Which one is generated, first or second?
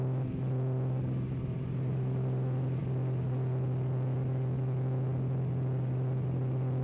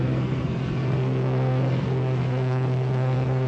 second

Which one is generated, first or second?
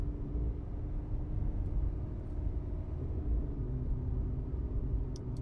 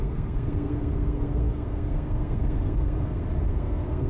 second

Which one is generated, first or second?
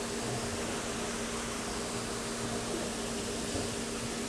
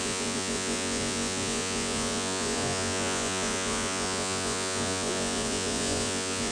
second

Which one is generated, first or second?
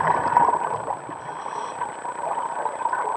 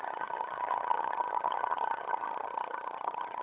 second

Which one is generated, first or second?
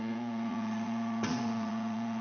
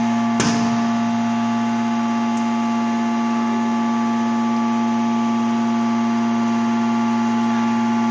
first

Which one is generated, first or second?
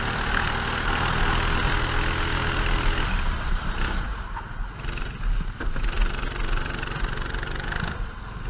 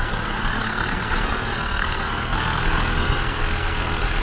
second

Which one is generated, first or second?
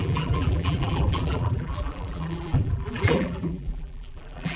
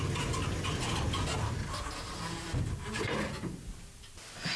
first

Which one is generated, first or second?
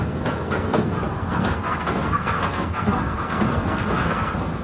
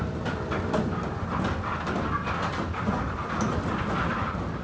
first